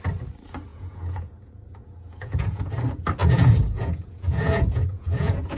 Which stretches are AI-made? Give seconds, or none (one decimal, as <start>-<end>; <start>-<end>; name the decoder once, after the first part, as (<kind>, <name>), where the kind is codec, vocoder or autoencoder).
0.7-2.7 (vocoder, Vocos); 3.2-5.6

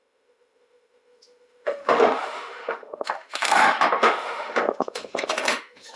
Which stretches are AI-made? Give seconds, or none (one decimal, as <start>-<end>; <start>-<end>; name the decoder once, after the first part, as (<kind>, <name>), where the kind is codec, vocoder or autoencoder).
0.0-6.0 (autoencoder, DAC-VAE)

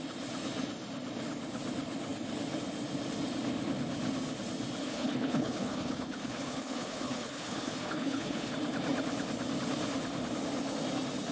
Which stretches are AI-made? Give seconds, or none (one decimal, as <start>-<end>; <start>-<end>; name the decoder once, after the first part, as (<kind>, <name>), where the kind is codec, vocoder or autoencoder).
4.8-8.5 (codec, HILCodec)

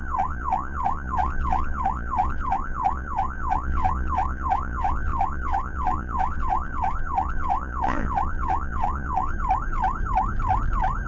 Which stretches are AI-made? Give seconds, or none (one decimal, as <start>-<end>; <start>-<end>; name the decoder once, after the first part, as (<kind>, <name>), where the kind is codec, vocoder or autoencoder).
0.0-9.3 (vocoder, Vocos)

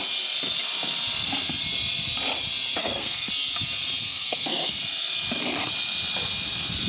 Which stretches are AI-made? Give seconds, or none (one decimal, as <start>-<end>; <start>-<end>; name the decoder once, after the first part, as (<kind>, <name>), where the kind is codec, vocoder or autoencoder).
2.8-3.3 (codec, SNAC); 4.1-4.7

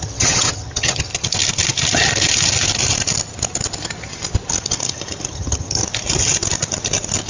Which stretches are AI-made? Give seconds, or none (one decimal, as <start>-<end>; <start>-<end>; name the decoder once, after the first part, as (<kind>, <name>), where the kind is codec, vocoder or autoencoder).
0.0-1.1 (vocoder, HiFi-GAN); 5.3-5.8